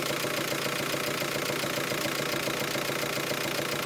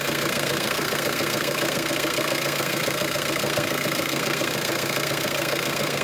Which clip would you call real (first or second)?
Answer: first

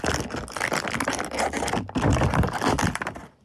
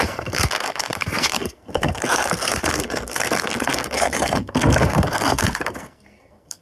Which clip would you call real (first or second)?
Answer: first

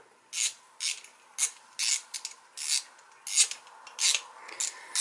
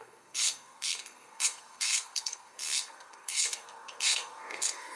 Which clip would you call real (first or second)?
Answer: first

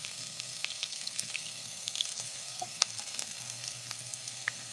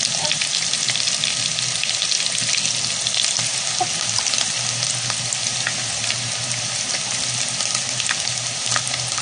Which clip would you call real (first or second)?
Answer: second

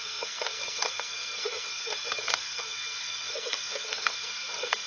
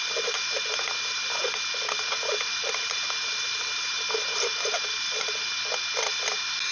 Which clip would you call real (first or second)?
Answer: second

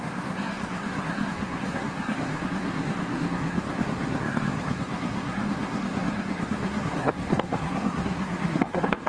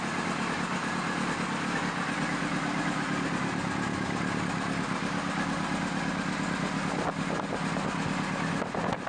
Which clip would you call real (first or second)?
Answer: second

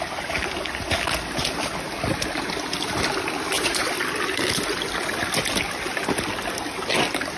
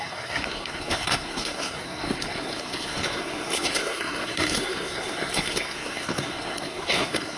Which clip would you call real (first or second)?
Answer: first